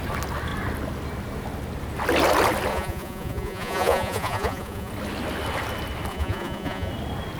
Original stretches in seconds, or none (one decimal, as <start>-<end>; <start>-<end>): 0.0-2.7; 4.9-6.1; 6.9-7.4